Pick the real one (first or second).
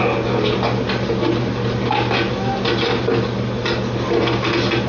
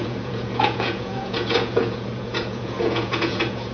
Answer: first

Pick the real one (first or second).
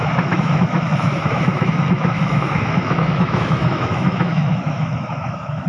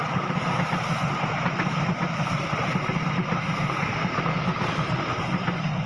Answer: second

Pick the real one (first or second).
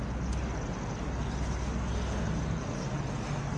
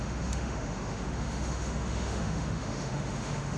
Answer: first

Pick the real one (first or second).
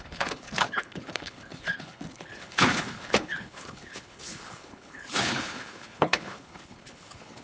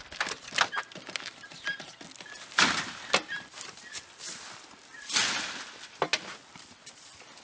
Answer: second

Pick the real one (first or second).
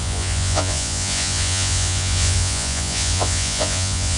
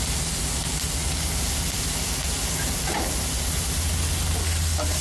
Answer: second